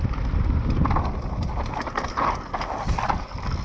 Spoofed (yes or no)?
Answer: no